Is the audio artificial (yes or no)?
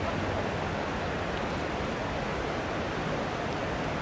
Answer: no